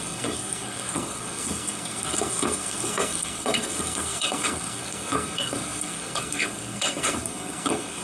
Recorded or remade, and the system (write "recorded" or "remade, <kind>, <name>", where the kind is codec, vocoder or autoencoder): remade, codec, SNAC